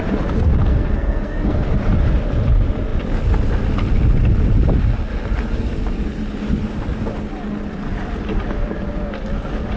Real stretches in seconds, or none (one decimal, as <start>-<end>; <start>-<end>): 0.0-0.7; 1.7-9.8